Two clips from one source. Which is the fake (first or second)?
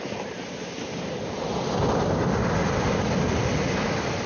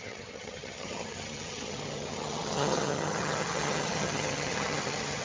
second